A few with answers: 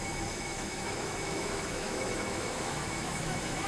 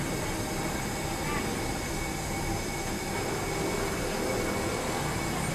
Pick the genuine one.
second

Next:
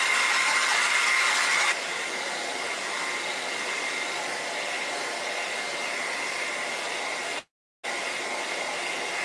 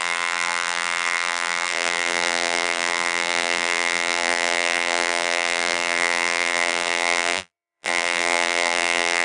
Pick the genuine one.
first